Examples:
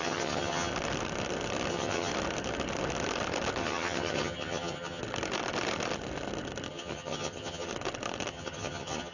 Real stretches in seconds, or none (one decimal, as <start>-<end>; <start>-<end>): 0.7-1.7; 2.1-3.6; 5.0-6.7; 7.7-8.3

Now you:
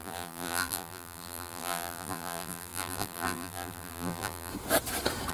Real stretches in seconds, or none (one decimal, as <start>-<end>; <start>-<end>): 4.5-5.3

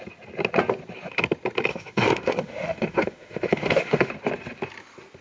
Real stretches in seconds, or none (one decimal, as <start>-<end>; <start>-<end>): 0.0-1.7; 4.1-5.2